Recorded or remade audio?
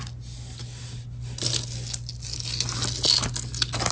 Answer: recorded